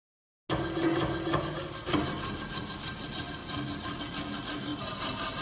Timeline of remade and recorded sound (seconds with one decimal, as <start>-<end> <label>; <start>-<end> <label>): 0.0-5.4 recorded